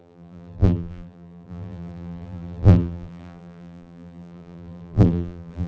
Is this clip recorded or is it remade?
remade